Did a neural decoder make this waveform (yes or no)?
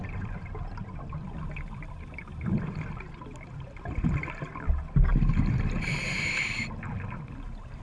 no